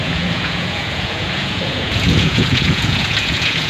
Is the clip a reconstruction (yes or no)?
yes